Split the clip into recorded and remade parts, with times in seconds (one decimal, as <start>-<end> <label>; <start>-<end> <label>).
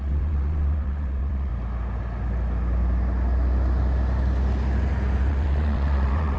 0.0-1.5 remade; 1.5-5.3 recorded; 5.3-6.4 remade